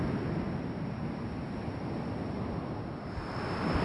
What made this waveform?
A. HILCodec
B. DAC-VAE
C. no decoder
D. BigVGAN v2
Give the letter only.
C